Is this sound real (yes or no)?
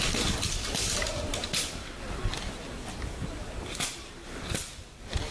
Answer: yes